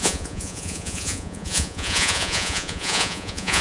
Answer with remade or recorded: remade